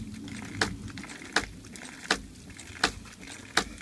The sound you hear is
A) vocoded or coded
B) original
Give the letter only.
B